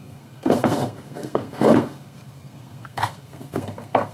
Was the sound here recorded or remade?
remade